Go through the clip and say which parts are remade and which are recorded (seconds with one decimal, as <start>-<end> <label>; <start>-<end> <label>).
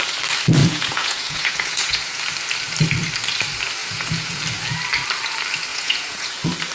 0.0-0.6 recorded; 0.6-2.2 remade; 2.2-3.8 recorded; 3.8-4.4 remade; 4.4-5.7 recorded; 5.7-6.3 remade; 6.3-6.7 recorded